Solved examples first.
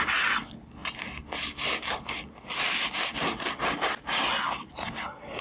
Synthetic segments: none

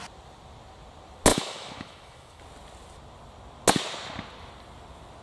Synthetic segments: 1.3-2.4